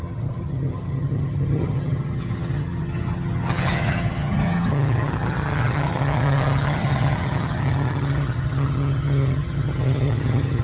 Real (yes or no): no